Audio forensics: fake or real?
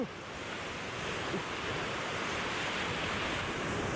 real